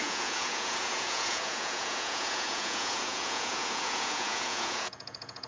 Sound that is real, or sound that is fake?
fake